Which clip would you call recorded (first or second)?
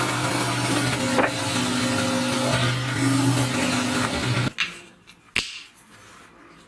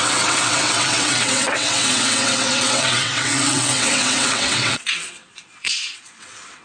first